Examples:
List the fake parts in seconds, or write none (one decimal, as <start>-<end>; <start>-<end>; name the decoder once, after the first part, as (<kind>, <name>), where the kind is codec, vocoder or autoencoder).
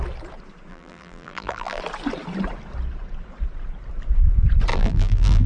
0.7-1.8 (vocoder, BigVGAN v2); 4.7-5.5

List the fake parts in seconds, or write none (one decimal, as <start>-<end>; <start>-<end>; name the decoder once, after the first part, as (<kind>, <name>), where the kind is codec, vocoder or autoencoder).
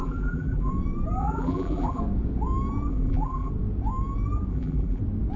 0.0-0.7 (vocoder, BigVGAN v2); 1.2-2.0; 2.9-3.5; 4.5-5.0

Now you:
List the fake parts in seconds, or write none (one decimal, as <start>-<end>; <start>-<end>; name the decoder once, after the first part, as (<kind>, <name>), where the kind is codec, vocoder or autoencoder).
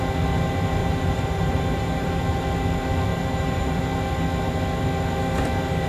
0.8-2.2 (vocoder, BigVGAN v2); 3.1-3.8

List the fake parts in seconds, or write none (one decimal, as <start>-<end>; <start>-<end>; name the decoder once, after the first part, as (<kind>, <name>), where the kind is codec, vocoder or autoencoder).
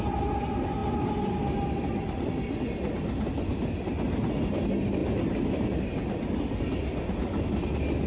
0.8-2.8 (vocoder, BigVGAN v2)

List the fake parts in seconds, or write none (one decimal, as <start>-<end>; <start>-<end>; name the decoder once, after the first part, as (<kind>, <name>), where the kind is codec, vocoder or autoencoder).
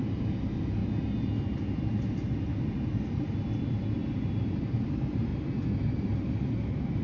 0.0-0.8 (vocoder, BigVGAN v2); 3.6-5.3; 6.0-7.0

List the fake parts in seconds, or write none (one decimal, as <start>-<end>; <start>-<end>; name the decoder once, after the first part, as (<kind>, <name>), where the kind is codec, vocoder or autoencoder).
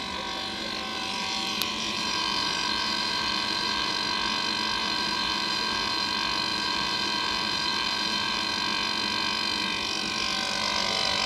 0.9-3.9 (vocoder, BigVGAN v2); 4.8-6.1; 6.5-8.5